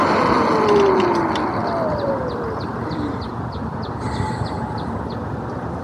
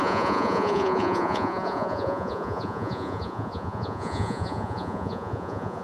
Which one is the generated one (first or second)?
second